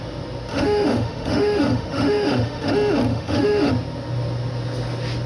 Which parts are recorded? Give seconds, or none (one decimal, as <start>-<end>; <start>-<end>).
0.0-0.5; 2.7-3.1; 3.7-5.3